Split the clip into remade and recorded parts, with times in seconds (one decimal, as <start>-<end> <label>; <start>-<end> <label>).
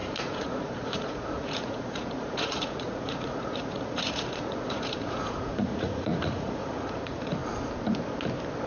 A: 0.0-7.4 remade; 7.4-8.7 recorded